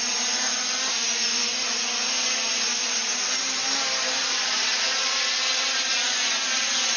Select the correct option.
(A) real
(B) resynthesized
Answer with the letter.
B